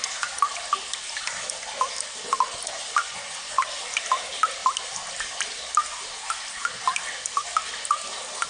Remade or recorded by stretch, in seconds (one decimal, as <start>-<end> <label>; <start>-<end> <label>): 0.0-3.0 recorded; 3.0-3.6 remade; 3.6-8.5 recorded